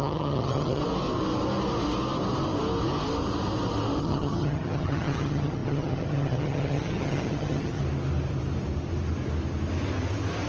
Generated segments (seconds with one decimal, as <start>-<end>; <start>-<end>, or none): 0.0-0.8; 4.0-7.8

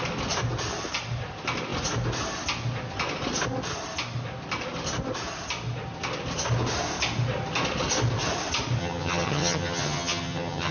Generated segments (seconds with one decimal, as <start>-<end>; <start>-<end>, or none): 8.8-10.7

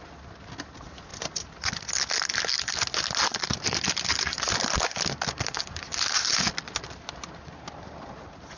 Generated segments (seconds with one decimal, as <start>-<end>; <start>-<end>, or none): none

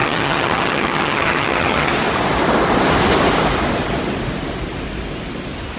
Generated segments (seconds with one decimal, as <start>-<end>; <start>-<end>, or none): 0.0-1.9

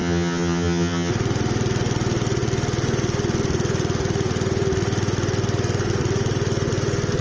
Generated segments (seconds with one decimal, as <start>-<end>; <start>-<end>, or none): 0.0-1.1

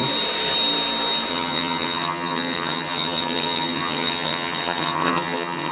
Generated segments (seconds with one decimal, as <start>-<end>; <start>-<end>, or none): 1.3-5.7

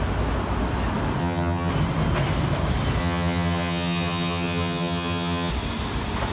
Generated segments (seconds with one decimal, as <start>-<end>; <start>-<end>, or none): 1.2-1.7; 3.0-5.5

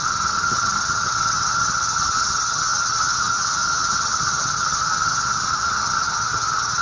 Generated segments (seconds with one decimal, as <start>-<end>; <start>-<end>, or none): 0.0-6.8